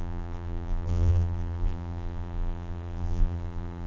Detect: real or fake fake